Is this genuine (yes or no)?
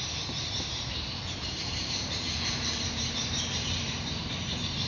no